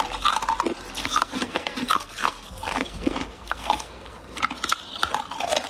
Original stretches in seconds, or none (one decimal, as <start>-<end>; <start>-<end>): 0.0-1.0; 4.4-5.7